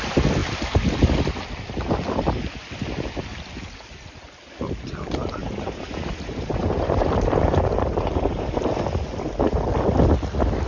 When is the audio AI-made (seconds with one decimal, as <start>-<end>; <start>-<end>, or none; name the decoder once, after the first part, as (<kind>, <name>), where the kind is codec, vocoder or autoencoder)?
5.4-8.7 (vocoder, BigVGAN v2)